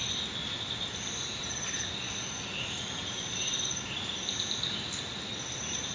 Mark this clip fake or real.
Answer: real